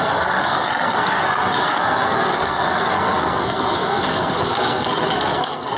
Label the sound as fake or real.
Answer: fake